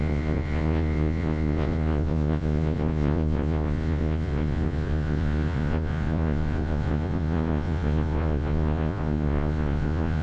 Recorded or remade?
remade